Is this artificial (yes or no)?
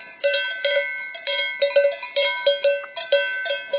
no